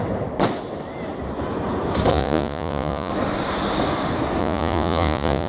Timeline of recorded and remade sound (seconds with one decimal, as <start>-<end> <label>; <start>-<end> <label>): 0.0-2.1 recorded; 2.1-3.1 remade; 3.1-4.4 recorded; 4.4-5.5 remade

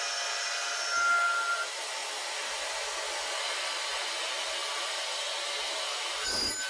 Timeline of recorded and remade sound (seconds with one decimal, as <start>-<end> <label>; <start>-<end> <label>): 0.0-6.7 recorded

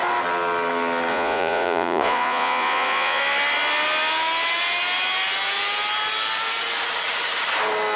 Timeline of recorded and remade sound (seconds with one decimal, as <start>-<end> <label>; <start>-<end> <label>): 0.0-1.1 recorded; 1.1-3.2 remade; 3.2-8.0 recorded

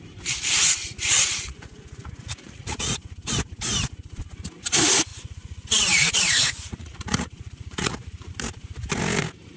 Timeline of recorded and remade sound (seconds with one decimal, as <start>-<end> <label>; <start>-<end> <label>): 0.0-0.8 recorded; 0.8-2.9 remade; 2.9-5.1 recorded; 5.1-8.3 remade; 8.3-9.6 recorded